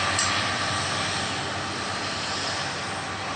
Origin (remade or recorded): recorded